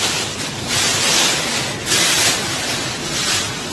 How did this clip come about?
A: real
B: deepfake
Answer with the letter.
A